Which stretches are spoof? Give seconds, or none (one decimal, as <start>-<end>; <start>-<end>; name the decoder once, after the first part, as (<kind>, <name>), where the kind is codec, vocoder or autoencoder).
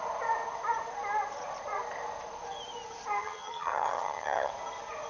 3.2-4.5 (vocoder, HiFi-GAN)